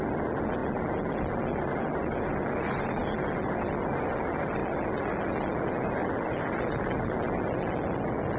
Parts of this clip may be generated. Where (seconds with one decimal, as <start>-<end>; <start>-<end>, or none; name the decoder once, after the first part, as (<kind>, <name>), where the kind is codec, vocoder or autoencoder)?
none